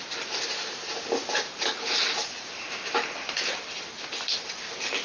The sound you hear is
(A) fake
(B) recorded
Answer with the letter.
A